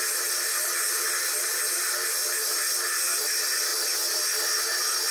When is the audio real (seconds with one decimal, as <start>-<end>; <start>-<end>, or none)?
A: 0.0-5.1